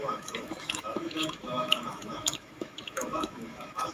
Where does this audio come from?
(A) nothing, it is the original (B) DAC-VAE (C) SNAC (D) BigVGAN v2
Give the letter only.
B